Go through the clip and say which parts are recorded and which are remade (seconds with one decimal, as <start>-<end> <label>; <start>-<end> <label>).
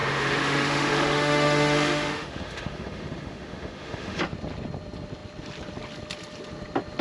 0.0-4.2 remade; 4.2-7.0 recorded